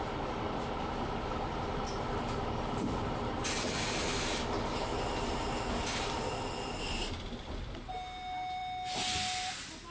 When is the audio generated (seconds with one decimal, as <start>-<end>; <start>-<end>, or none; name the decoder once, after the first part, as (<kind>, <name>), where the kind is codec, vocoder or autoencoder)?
none

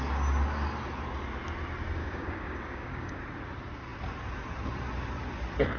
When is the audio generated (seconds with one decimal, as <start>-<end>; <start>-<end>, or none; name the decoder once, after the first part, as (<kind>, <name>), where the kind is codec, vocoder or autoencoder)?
2.0-3.2 (codec, DAC)